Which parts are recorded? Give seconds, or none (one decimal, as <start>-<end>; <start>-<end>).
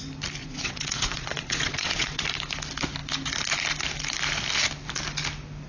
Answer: 0.0-0.4; 2.2-5.7